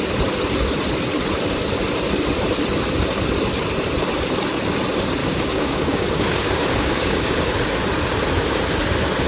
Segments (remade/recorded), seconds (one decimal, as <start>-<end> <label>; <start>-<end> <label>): 0.0-5.2 recorded; 5.2-7.3 remade; 7.3-9.3 recorded